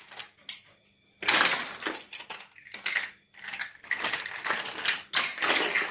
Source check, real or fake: real